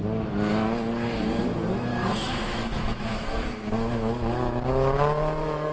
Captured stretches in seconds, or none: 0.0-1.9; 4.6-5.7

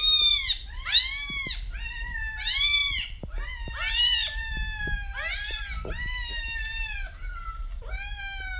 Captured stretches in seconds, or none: 0.0-8.6